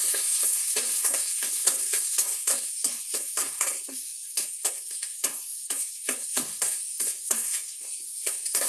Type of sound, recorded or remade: remade